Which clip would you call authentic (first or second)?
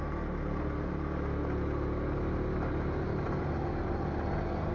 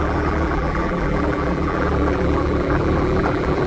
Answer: first